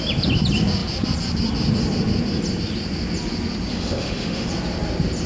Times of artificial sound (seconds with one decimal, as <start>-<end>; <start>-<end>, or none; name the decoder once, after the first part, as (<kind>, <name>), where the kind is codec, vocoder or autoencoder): 3.7-4.5 (autoencoder, DAC-VAE)